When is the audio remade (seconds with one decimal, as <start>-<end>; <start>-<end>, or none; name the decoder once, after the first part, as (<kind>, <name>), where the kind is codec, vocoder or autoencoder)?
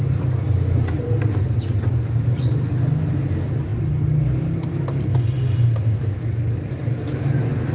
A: none